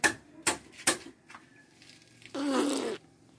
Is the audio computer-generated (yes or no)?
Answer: no